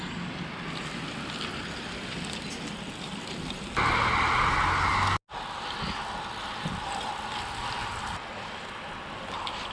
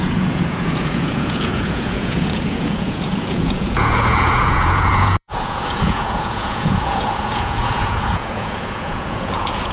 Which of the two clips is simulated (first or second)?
second